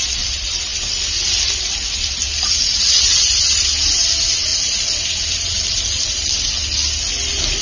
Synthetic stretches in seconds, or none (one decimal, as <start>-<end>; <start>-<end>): none